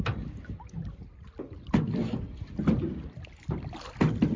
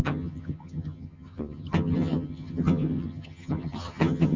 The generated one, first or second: second